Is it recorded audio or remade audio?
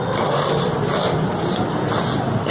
recorded